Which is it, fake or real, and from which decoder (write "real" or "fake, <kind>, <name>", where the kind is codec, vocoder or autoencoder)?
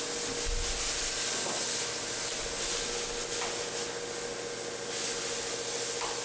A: real